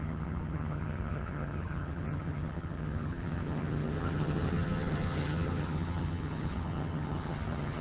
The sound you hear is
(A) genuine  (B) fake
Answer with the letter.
B